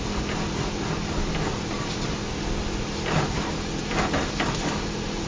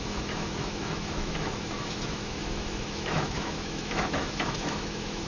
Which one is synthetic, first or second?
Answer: second